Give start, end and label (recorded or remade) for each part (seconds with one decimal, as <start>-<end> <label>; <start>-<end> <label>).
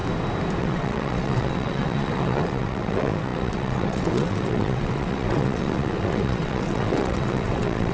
0.0-0.6 recorded; 0.6-7.9 remade